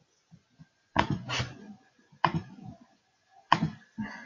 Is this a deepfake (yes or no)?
yes